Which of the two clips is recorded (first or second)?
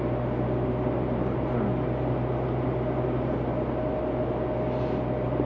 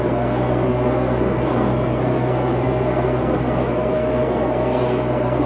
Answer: first